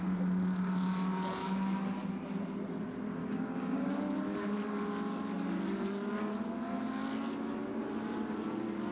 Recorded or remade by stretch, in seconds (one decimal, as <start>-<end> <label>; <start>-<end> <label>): 0.0-3.2 recorded; 3.2-3.9 remade; 3.9-8.9 recorded